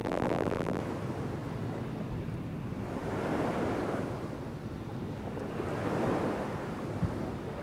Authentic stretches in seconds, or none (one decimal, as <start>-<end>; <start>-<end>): 0.8-7.6